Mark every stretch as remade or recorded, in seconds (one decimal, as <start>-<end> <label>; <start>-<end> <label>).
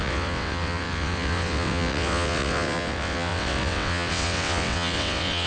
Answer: 0.0-5.5 remade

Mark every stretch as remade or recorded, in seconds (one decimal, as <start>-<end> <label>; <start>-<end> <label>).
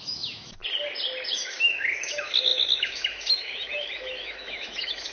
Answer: 0.0-0.6 remade; 0.6-1.3 recorded; 1.3-5.1 remade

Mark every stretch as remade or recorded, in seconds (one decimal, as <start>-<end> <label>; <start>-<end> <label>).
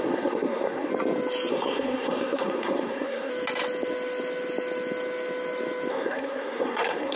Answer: 0.0-0.9 remade; 0.9-1.5 recorded; 1.5-3.3 remade; 3.3-5.9 recorded; 5.9-7.2 remade